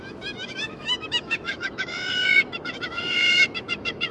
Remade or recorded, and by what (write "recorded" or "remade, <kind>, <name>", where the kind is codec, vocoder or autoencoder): remade, autoencoder, DAC-VAE